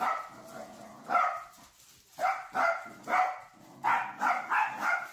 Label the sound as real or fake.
real